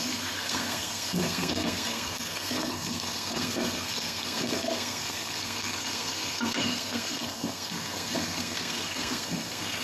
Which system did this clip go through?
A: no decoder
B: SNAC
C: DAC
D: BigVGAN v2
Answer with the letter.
B